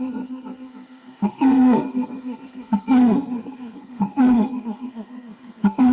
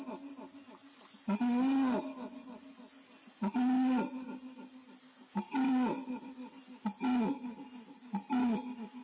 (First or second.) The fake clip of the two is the first